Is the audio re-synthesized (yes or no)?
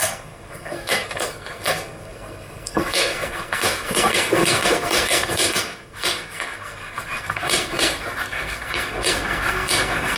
yes